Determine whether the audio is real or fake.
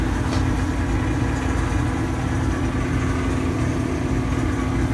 real